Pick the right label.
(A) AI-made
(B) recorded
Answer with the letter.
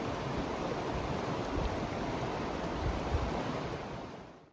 B